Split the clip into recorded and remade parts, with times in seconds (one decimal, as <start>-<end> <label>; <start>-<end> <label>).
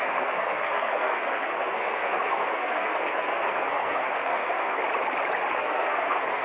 0.0-4.8 remade; 4.8-5.5 recorded; 5.5-6.4 remade